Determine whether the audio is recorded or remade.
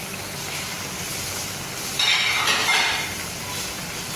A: recorded